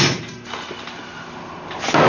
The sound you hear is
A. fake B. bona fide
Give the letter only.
B